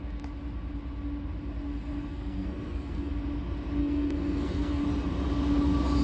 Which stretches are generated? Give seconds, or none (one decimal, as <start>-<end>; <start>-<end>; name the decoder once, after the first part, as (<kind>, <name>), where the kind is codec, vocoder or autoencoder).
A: 2.1-3.1 (codec, SNAC); 3.8-4.8